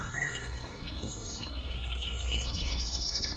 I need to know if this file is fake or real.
fake